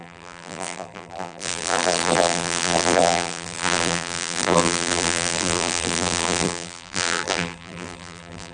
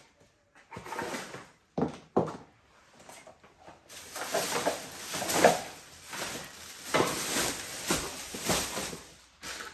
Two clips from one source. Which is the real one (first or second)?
second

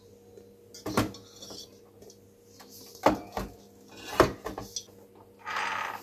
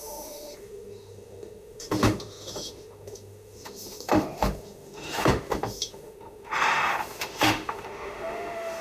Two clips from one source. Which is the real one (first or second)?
first